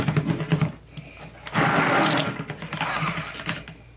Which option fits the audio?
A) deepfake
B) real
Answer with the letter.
B